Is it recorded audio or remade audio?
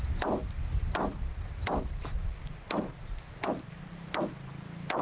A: recorded